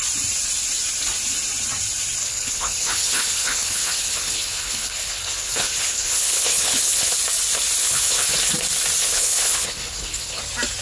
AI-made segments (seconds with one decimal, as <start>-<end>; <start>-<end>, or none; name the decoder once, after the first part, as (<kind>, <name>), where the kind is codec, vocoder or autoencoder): 2.2-7.1 (codec, HILCodec); 7.8-8.5; 9.0-10.4